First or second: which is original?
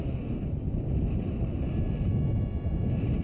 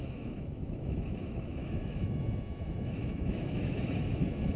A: first